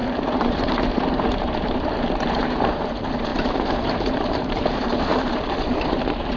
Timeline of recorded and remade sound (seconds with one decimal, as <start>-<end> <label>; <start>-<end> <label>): 0.0-6.4 remade